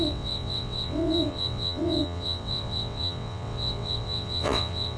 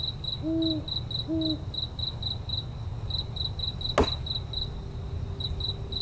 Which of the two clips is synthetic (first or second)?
first